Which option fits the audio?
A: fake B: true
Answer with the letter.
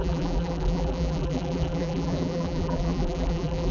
A